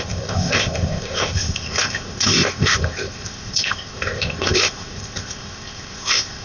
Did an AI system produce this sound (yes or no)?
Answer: yes